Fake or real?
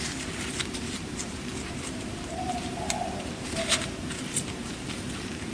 fake